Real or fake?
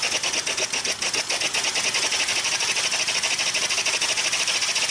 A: real